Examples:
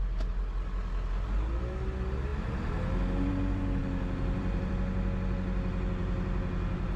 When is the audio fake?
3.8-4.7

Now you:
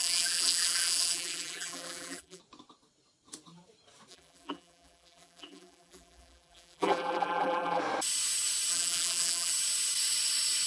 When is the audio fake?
0.0-2.4; 4.1-7.8; 8.7-9.5